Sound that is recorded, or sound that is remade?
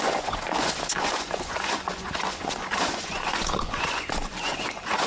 remade